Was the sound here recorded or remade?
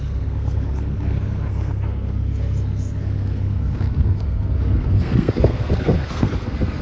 remade